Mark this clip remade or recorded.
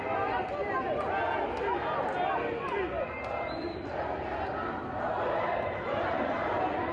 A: recorded